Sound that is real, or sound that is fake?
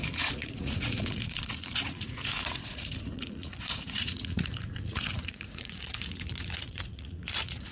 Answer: fake